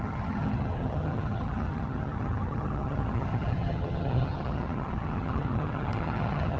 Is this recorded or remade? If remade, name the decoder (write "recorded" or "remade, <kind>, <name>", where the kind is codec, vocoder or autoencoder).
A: remade, vocoder, HiFi-GAN